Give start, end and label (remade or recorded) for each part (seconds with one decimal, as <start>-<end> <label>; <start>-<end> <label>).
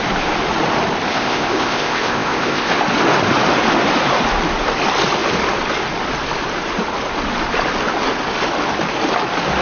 0.0-1.1 recorded; 1.1-2.7 remade; 2.7-9.6 recorded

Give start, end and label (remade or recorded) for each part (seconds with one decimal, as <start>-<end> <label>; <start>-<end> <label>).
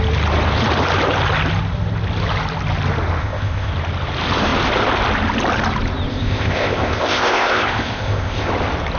0.0-3.2 recorded; 3.2-3.7 remade; 3.7-6.1 recorded; 6.1-8.5 remade; 8.5-9.0 recorded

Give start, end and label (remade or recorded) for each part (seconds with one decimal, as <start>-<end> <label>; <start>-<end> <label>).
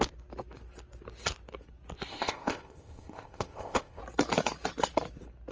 0.0-2.1 recorded; 2.1-4.0 remade; 4.0-5.5 recorded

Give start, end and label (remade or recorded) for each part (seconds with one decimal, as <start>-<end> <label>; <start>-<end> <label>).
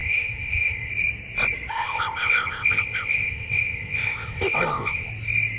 0.0-0.9 remade; 0.9-1.7 recorded; 1.7-5.1 remade; 5.1-5.6 recorded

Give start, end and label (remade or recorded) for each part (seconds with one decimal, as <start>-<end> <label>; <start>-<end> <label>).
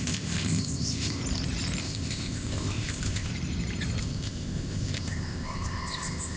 0.0-1.2 remade; 1.2-1.8 recorded; 1.8-3.3 remade; 3.3-4.0 recorded; 4.0-6.4 remade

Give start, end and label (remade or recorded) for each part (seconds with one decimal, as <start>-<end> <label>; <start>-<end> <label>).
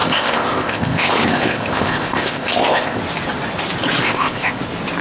0.0-3.0 remade; 3.0-4.0 recorded; 4.0-4.6 remade; 4.6-5.0 recorded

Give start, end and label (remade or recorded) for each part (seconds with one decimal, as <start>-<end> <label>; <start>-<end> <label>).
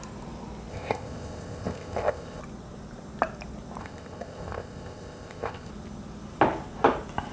0.0-0.7 recorded; 0.7-2.4 remade; 2.4-3.8 recorded; 3.8-5.7 remade; 5.7-7.3 recorded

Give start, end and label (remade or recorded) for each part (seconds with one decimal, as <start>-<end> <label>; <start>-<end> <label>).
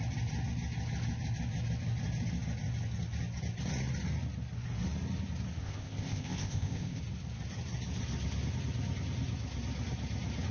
0.0-5.6 recorded; 5.6-7.0 remade; 7.0-10.5 recorded